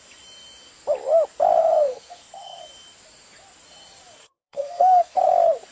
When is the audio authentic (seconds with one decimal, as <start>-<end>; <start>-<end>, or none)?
0.0-1.6; 2.6-4.2; 5.2-5.7